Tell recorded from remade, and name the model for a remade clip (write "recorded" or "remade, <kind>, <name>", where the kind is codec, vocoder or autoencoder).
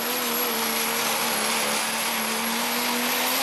recorded